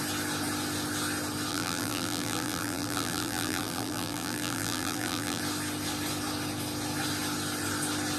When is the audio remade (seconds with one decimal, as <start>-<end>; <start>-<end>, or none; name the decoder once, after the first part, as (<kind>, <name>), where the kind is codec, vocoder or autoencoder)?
1.5-5.4 (vocoder, BigVGAN v2)